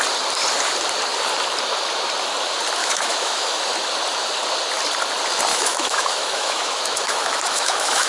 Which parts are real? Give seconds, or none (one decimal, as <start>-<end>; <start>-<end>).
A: 0.0-2.8; 3.6-5.5